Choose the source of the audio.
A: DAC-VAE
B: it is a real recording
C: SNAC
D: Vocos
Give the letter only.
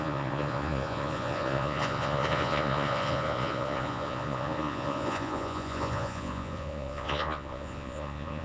D